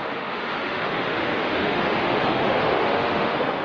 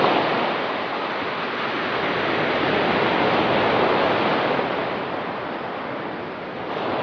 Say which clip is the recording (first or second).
second